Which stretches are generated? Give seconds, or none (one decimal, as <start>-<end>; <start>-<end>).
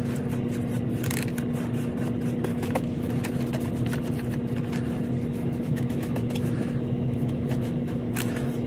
2.5-3.1; 5.3-8.7